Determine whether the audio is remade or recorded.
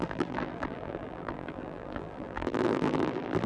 remade